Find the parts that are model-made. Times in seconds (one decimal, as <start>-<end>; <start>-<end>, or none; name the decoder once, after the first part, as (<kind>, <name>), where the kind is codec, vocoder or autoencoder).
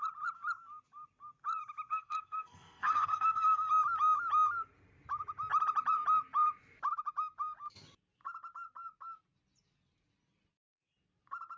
1.9-3.7 (codec, SNAC)